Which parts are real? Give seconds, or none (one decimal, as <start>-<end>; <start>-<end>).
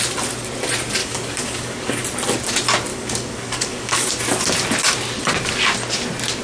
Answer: 0.0-1.0; 2.0-2.9; 4.1-6.4